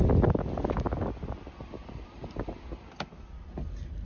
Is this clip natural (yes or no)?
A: yes